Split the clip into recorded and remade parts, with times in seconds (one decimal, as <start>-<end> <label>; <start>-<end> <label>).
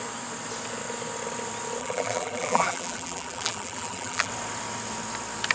0.0-1.8 recorded; 1.8-4.3 remade; 4.3-5.5 recorded